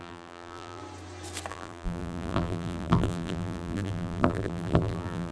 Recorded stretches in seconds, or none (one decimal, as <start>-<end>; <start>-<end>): 0.8-1.5

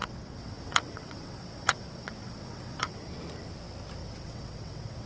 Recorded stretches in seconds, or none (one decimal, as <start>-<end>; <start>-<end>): 3.1-4.0

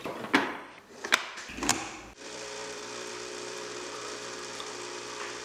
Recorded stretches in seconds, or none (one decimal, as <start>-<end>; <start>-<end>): none

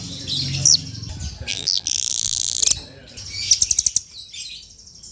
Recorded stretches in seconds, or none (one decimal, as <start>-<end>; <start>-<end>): 0.0-1.5; 2.6-5.1

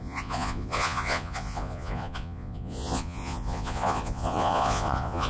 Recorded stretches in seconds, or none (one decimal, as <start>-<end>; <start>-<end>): none

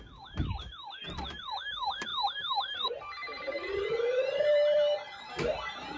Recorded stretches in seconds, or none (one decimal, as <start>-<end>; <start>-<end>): 0.0-2.1; 5.3-6.0